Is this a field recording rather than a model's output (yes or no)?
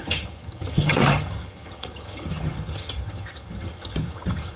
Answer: no